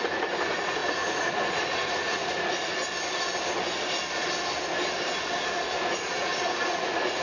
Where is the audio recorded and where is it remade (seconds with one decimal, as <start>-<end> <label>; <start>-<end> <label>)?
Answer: 0.0-2.8 remade; 2.8-5.6 recorded; 5.6-7.2 remade